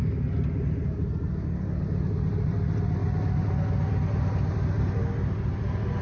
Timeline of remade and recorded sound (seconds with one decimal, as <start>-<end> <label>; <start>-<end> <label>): 0.0-6.0 recorded